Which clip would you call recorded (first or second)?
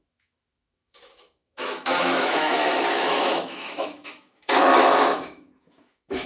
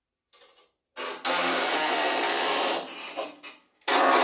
second